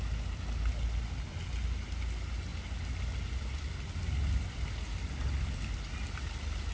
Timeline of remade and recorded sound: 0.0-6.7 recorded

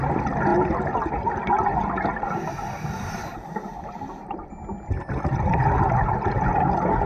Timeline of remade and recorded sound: 0.0-3.2 recorded; 3.2-3.9 remade; 3.9-7.1 recorded